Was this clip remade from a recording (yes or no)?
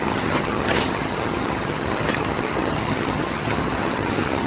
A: yes